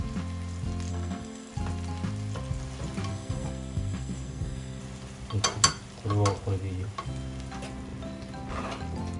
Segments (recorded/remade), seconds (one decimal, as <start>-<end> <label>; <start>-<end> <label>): 0.0-0.9 recorded; 0.9-1.5 remade; 1.5-3.1 recorded; 3.1-4.8 remade; 4.8-9.2 recorded